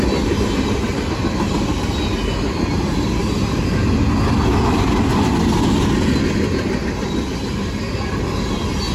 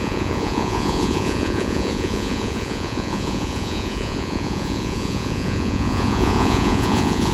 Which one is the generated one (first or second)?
second